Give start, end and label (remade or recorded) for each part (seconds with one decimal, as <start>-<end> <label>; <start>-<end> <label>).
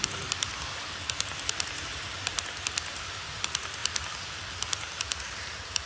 0.0-2.3 remade; 2.3-2.9 recorded; 2.9-3.8 remade; 3.8-5.3 recorded; 5.3-5.9 remade